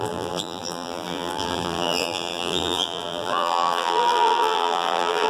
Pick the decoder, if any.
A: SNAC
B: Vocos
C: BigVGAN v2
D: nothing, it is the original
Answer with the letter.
C